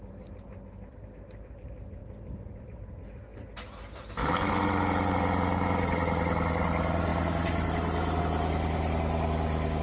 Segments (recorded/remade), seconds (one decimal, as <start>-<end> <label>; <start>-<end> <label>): 0.0-9.8 recorded